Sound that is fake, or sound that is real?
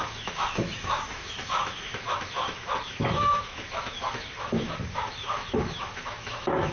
fake